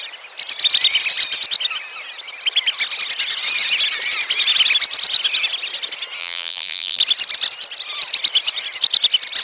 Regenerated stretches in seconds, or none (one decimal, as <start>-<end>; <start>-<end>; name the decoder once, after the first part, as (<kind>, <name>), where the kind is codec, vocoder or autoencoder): 6.2-7.0 (vocoder, BigVGAN v2)